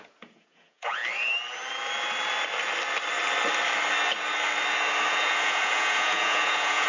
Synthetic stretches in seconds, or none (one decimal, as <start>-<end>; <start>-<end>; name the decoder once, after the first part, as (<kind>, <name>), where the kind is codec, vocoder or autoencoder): 0.0-1.0 (vocoder, Vocos); 5.1-6.9